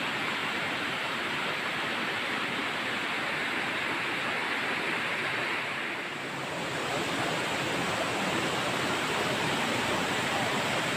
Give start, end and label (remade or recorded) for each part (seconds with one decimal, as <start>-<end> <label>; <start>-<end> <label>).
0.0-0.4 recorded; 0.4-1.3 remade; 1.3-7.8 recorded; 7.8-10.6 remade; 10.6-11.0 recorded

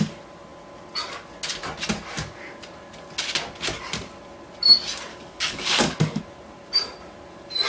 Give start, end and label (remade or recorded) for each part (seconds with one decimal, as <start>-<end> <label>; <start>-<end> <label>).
0.0-5.1 recorded; 5.1-6.2 remade; 6.2-7.7 recorded

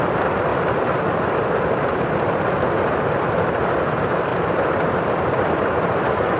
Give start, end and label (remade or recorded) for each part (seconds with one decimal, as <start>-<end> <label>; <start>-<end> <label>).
0.0-4.3 remade; 4.3-5.0 recorded; 5.0-6.4 remade